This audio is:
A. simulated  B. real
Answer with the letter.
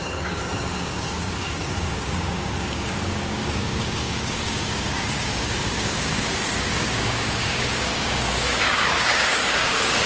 A